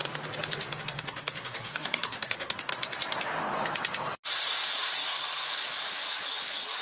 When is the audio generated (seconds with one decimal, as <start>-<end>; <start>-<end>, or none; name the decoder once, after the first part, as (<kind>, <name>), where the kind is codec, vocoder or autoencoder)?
0.8-2.7 (codec, SNAC)